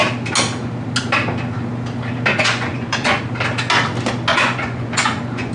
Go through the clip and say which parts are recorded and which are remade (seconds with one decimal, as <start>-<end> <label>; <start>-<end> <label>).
0.0-2.3 recorded; 2.3-3.2 remade; 3.2-4.3 recorded; 4.3-5.5 remade

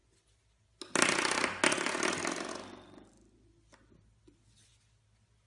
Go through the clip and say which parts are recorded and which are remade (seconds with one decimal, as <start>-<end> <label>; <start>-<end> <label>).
0.0-5.5 recorded

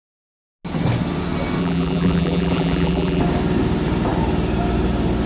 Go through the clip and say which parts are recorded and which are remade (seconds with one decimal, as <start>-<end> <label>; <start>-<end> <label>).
0.0-1.6 recorded; 1.6-3.2 remade; 3.2-5.3 recorded

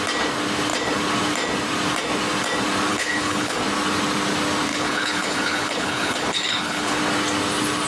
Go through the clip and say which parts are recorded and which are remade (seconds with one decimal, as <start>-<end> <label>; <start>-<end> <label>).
0.0-2.9 recorded; 2.9-3.6 remade; 3.6-4.7 recorded; 4.7-7.0 remade; 7.0-7.9 recorded

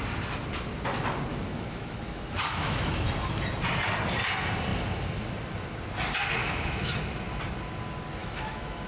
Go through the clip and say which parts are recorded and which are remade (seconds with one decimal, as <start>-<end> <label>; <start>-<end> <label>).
0.0-1.3 recorded; 1.3-2.9 remade; 2.9-6.4 recorded; 6.4-7.0 remade; 7.0-8.2 recorded; 8.2-8.9 remade

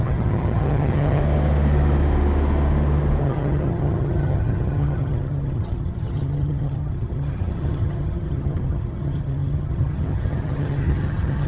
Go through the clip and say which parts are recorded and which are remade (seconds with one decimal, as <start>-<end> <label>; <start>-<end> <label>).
0.0-1.2 remade; 1.2-3.2 recorded; 3.2-11.5 remade